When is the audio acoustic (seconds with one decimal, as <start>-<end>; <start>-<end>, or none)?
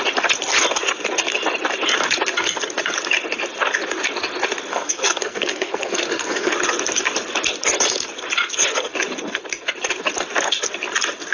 0.0-4.7; 6.5-11.3